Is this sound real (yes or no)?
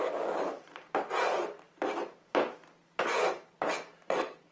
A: yes